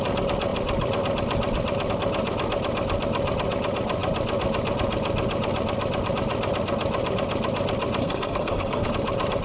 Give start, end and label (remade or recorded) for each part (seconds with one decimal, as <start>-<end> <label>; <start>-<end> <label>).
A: 0.0-8.0 recorded; 8.0-8.9 remade; 8.9-9.4 recorded